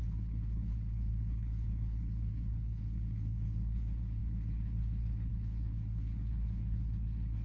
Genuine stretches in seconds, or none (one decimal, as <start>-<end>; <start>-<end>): none